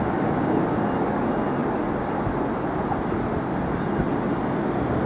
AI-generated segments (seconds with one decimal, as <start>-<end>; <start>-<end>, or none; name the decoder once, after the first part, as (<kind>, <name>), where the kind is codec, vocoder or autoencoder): none